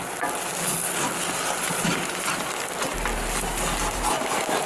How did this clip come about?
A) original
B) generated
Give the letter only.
A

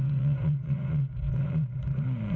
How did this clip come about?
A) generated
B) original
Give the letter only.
A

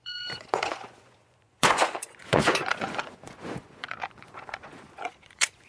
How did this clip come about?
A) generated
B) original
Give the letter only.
A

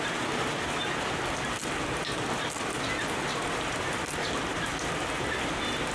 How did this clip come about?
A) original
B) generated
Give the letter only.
A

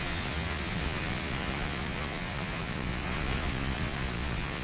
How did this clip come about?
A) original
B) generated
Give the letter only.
B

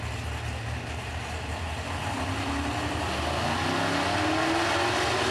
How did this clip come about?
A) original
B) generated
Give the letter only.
A